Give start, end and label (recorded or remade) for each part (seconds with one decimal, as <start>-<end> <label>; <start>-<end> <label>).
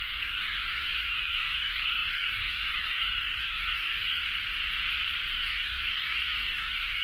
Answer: 0.0-4.2 remade; 4.2-5.3 recorded; 5.3-7.0 remade